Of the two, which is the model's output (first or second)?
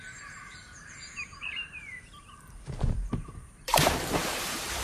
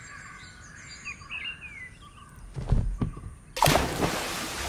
first